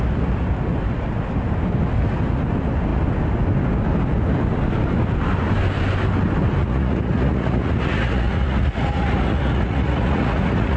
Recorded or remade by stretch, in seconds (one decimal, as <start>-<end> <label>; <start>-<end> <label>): 0.0-6.6 recorded; 6.6-10.8 remade